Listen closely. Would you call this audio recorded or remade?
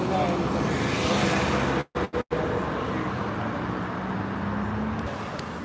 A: recorded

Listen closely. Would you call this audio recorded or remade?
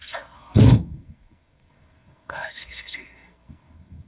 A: remade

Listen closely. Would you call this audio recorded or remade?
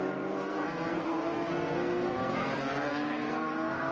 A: remade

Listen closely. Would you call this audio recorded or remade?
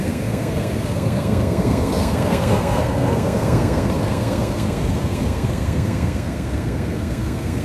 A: remade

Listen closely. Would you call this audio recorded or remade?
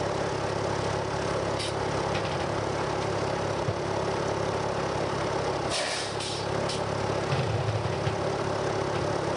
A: recorded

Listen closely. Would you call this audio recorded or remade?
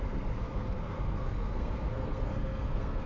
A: remade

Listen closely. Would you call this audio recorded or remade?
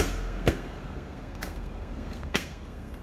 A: remade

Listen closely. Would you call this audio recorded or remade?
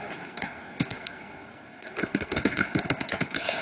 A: remade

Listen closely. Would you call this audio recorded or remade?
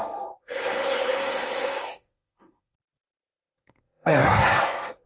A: remade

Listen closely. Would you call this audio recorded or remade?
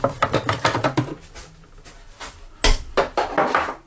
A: recorded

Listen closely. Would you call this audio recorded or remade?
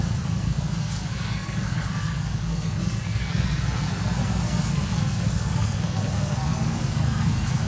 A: remade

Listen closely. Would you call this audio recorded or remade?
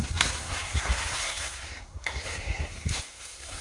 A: remade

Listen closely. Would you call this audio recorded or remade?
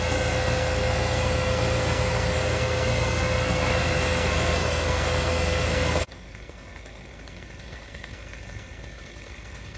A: remade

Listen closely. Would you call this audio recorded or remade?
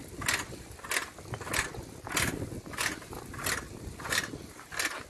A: recorded